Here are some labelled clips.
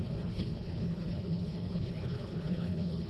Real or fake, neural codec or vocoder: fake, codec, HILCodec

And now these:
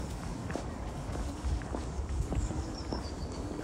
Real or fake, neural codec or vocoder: fake, codec, DAC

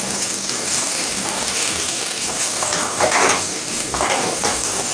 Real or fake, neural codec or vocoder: fake, codec, DAC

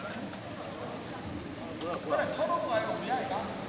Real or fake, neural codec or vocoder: real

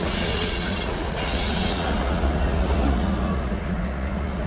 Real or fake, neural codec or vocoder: fake, vocoder, Vocos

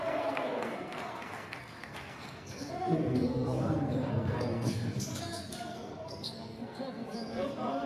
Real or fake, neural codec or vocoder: fake, codec, SNAC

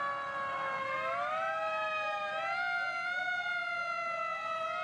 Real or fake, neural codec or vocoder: real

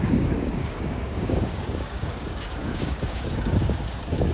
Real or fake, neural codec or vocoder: fake, codec, DAC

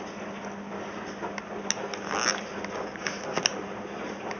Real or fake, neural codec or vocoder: real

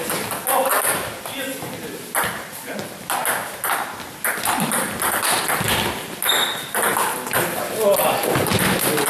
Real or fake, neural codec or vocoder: real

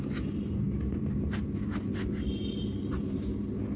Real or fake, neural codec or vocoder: real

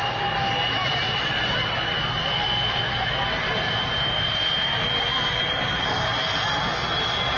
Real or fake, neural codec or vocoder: real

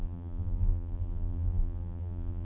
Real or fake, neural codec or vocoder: fake, vocoder, BigVGAN v2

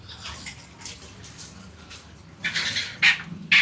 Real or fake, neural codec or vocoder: real